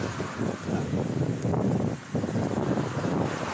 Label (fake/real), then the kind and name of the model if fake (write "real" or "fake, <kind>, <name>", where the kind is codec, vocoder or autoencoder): real